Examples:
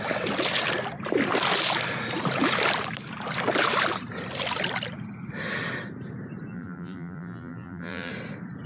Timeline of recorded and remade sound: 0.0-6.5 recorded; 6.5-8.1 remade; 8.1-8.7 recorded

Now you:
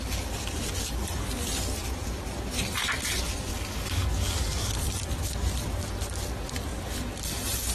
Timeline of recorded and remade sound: 0.0-3.5 recorded; 3.5-4.7 remade; 4.7-7.7 recorded

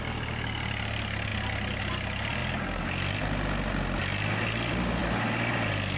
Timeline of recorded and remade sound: 0.0-6.0 recorded

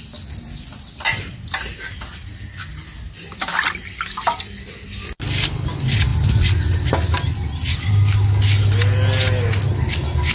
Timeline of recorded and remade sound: 0.0-10.3 recorded

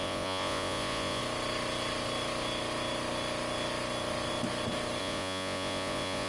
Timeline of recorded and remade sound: 0.0-1.2 remade; 1.2-5.0 recorded; 5.0-6.3 remade